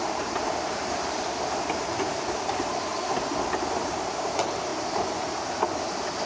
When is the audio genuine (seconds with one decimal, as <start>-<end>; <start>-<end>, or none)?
2.9-3.7; 4.7-6.3